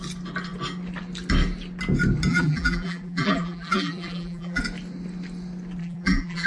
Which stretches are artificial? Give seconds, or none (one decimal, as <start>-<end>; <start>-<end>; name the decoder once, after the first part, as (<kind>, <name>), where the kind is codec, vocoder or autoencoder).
2.3-4.6 (vocoder, BigVGAN v2); 5.8-6.5